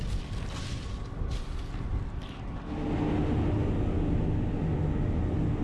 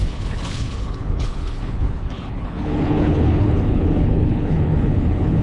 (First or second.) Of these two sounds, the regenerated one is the second